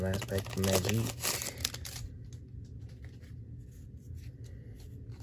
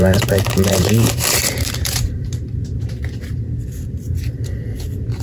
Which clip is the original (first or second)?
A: first